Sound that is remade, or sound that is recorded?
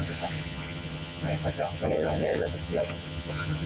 remade